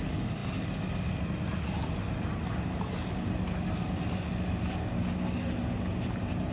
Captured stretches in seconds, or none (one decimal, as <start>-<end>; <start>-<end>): 0.0-6.5